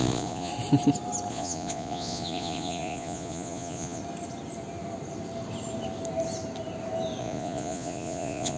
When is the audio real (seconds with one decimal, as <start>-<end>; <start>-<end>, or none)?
0.5-1.3; 4.0-7.2